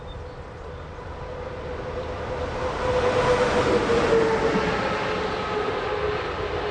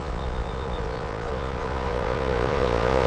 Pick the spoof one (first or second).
second